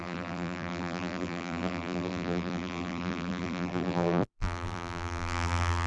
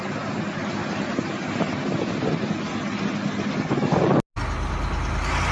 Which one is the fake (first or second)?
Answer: first